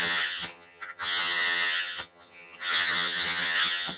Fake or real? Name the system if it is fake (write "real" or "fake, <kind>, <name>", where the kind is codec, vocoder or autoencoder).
fake, vocoder, HiFi-GAN